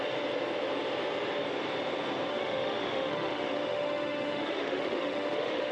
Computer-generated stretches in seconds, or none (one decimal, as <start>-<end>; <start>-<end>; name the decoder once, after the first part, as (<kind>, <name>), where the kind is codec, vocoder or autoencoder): 2.3-5.7 (autoencoder, DAC-VAE)